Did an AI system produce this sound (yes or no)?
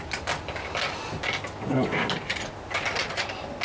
no